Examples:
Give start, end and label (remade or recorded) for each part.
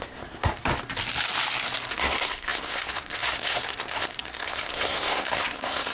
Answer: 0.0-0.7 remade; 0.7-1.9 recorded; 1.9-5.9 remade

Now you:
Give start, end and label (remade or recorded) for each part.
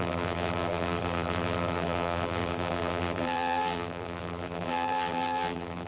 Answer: 0.0-5.9 remade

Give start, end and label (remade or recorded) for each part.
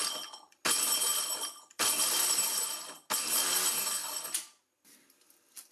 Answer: 0.0-0.6 remade; 0.6-1.1 recorded; 1.1-2.9 remade; 2.9-4.0 recorded; 4.0-4.6 remade; 4.6-5.7 recorded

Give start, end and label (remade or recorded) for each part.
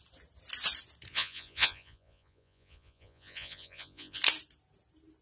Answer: 0.0-1.1 recorded; 1.1-4.2 remade; 4.2-5.2 recorded